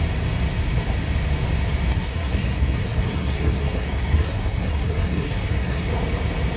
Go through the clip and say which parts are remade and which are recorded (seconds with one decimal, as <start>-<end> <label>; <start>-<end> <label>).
0.0-1.9 recorded; 1.9-5.9 remade; 5.9-6.6 recorded